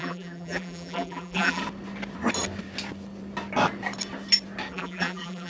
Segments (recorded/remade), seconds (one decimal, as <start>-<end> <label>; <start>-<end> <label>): 0.0-1.6 remade; 1.6-4.7 recorded; 4.7-5.5 remade